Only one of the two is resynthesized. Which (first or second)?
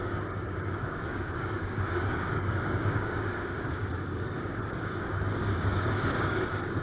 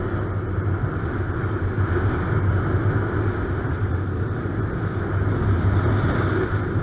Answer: first